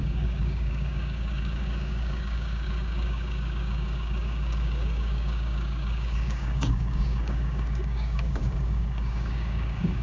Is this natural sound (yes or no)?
no